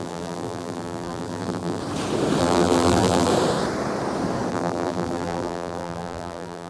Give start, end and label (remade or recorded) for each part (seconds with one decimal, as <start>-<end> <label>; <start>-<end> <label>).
0.0-1.8 remade; 1.8-2.4 recorded; 2.4-3.3 remade; 3.3-4.5 recorded; 4.5-6.7 remade